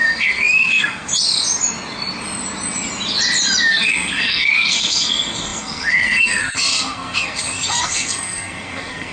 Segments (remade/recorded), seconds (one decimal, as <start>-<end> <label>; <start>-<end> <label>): 0.0-1.1 remade; 1.1-3.7 recorded; 3.7-9.1 remade